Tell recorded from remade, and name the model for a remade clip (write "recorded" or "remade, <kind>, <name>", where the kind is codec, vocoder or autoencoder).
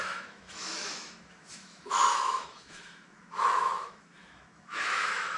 remade, autoencoder, DAC-VAE